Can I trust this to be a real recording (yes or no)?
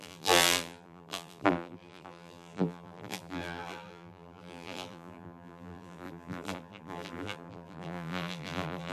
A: no